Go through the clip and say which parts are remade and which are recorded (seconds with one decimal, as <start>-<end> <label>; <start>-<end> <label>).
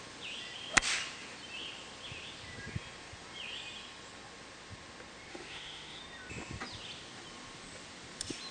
0.0-5.3 recorded; 5.3-6.0 remade; 6.0-8.5 recorded